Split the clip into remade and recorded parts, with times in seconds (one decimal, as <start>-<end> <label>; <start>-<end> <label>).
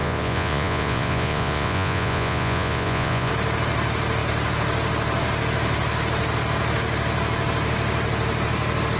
0.0-3.3 remade; 3.3-9.0 recorded